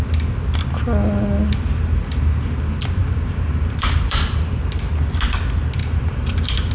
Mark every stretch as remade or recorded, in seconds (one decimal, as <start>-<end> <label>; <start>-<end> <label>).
0.0-3.0 recorded; 3.0-4.9 remade; 4.9-5.8 recorded; 5.8-6.7 remade